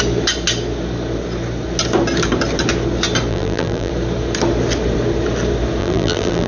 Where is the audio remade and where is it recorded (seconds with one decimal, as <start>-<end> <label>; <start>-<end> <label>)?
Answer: 0.0-3.3 recorded; 3.3-3.9 remade; 3.9-5.8 recorded; 5.8-6.5 remade

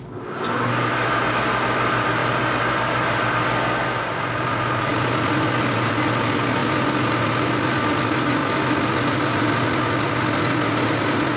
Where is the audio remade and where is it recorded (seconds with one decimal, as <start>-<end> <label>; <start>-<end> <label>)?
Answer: 0.0-2.2 recorded; 2.2-3.3 remade; 3.3-8.4 recorded; 8.4-10.3 remade; 10.3-11.4 recorded

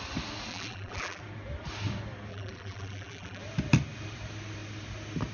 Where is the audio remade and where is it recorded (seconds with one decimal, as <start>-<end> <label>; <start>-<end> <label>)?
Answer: 0.0-0.5 recorded; 0.5-1.2 remade; 1.2-2.3 recorded; 2.3-3.4 remade; 3.4-5.3 recorded

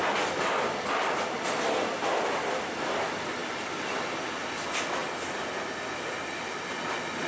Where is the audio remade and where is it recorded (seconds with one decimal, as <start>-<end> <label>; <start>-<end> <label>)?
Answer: 0.0-7.3 recorded

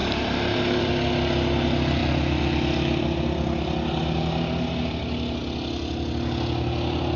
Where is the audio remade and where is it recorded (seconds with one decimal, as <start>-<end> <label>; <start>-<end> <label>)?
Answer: 0.0-0.9 remade; 0.9-7.2 recorded

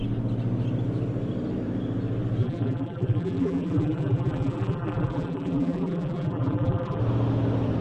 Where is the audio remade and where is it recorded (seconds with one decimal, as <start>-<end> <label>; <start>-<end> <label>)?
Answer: 0.0-2.4 recorded; 2.4-7.0 remade; 7.0-7.8 recorded